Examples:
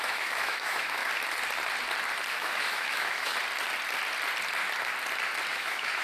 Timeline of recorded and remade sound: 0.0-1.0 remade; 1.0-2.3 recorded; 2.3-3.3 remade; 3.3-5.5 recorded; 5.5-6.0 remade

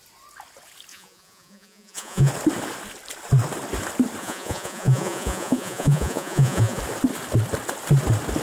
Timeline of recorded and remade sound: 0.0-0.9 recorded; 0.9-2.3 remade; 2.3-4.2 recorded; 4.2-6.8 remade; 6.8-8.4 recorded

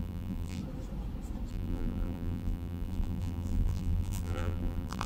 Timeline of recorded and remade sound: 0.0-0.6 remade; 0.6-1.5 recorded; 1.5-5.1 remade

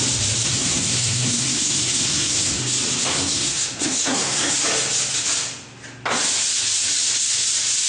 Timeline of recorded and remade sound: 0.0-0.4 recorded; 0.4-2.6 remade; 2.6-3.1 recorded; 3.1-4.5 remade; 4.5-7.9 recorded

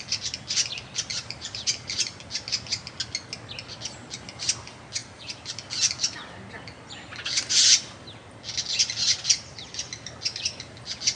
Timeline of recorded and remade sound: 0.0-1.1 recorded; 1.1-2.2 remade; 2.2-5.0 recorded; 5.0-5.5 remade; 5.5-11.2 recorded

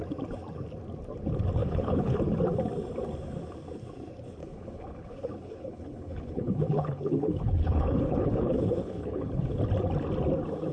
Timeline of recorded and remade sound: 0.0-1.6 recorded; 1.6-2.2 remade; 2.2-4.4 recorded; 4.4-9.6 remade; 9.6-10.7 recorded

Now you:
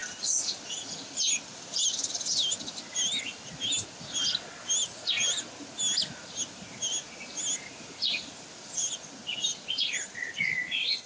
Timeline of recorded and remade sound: 0.0-11.1 recorded